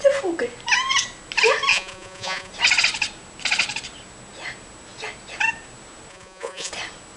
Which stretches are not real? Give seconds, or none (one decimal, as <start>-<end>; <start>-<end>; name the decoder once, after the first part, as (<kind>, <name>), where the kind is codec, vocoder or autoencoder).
1.7-2.5 (vocoder, Vocos); 6.1-6.7